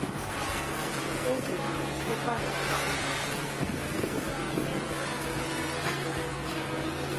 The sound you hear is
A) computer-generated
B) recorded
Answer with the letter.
A